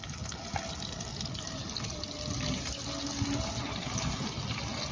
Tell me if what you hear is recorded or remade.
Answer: recorded